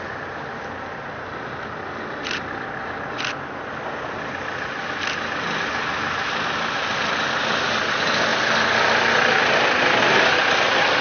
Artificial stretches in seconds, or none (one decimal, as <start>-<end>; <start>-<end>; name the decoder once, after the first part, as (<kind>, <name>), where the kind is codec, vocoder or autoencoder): none